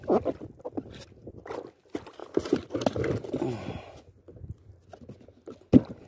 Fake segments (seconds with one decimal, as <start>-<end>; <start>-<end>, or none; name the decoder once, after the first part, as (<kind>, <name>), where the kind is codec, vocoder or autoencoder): none